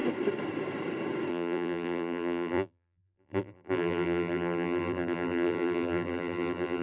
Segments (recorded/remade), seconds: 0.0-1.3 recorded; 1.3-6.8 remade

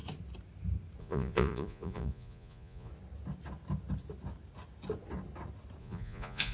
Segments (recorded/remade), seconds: 0.0-1.0 recorded; 1.0-2.9 remade; 2.9-5.8 recorded; 5.8-6.5 remade

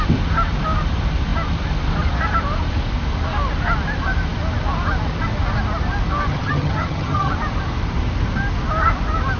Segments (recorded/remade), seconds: 0.0-6.3 recorded; 6.3-7.3 remade; 7.3-9.4 recorded

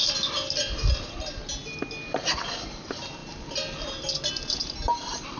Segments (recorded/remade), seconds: 0.0-5.4 recorded

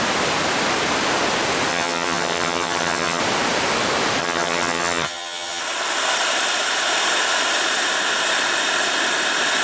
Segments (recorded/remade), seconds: 0.0-1.7 recorded; 1.7-3.2 remade; 3.2-4.2 recorded; 4.2-5.6 remade; 5.6-9.6 recorded